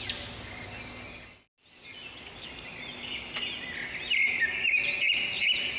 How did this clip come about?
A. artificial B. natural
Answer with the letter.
B